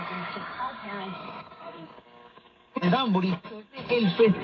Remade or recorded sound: remade